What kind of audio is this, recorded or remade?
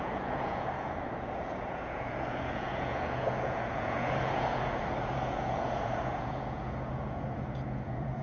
remade